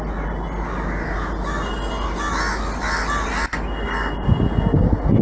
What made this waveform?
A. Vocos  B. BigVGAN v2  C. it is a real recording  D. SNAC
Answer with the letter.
C